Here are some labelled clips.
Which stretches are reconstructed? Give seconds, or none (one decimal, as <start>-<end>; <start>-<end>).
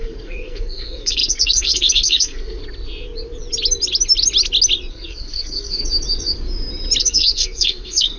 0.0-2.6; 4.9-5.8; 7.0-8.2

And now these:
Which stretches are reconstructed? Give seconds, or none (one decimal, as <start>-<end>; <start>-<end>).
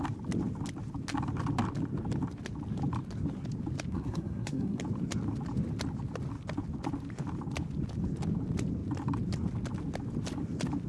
3.9-4.8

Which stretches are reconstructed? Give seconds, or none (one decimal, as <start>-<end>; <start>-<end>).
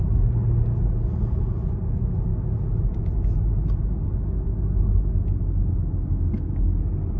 none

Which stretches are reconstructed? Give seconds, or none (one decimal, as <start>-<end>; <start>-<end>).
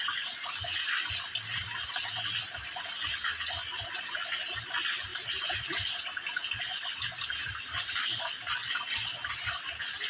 none